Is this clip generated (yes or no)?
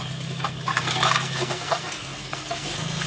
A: yes